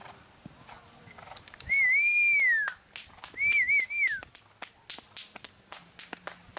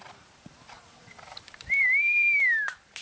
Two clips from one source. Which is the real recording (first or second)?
first